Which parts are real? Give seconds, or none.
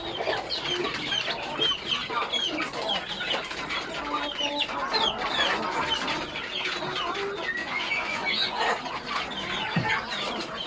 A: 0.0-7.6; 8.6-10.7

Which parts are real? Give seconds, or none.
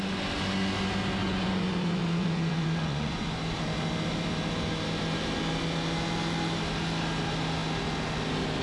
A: 0.0-1.2; 3.4-8.6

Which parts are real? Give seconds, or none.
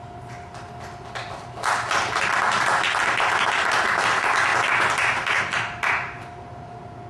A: 0.0-7.1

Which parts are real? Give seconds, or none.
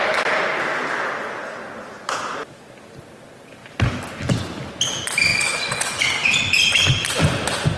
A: 0.0-5.3; 6.0-7.8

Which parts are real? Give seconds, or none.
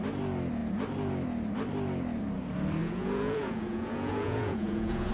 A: 0.0-2.8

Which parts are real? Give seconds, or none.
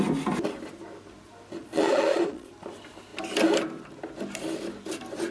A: 0.0-1.6; 2.5-5.3